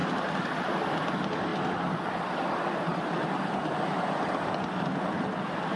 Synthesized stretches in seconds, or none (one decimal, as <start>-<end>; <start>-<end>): 0.0-1.5; 5.0-5.8